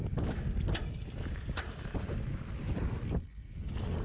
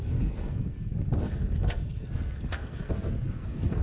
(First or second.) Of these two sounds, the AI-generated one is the second